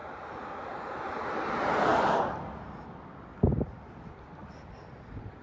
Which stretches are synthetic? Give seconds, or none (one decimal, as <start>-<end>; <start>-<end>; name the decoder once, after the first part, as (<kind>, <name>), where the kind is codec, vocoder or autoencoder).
0.0-1.0 (vocoder, BigVGAN v2)

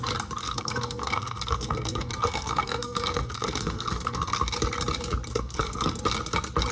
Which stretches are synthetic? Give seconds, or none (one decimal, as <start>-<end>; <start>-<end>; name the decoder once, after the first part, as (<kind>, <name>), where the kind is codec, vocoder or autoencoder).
0.4-4.4 (codec, SNAC); 5.3-6.0

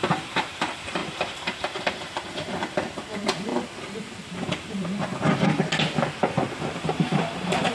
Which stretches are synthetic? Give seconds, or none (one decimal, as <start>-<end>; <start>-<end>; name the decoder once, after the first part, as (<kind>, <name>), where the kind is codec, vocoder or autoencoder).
0.0-3.5 (vocoder, BigVGAN v2); 4.2-5.1; 6.6-7.7

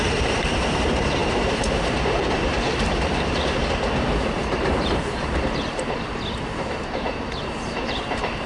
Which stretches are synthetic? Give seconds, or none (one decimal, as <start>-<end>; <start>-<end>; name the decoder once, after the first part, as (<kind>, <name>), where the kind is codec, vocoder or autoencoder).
0.0-8.5 (vocoder, BigVGAN v2)

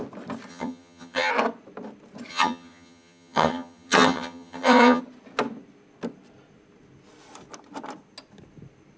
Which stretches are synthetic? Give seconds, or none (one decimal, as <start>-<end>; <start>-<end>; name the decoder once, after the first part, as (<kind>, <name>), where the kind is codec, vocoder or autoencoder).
0.5-1.3 (vocoder, HiFi-GAN); 2.3-5.0

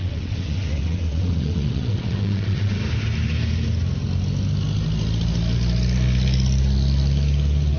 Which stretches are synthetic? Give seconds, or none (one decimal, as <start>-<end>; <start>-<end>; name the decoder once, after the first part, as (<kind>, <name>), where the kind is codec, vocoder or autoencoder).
0.0-2.8 (vocoder, WaveNeXt)